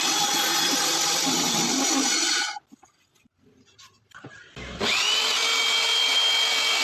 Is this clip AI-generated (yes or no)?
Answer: no